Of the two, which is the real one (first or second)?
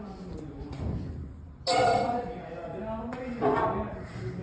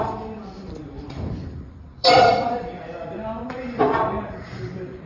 first